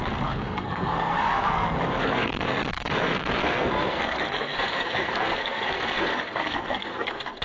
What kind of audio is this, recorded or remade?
remade